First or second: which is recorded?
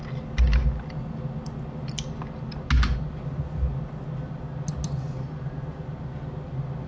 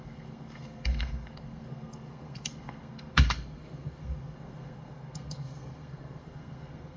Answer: first